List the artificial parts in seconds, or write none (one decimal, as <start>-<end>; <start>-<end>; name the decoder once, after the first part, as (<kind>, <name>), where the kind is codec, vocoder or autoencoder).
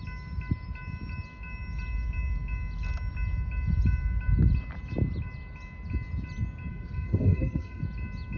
6.7-7.8 (codec, SNAC)